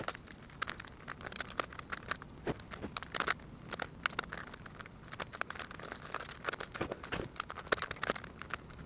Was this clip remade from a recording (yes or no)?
no